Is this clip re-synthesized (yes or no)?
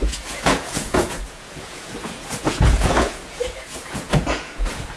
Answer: yes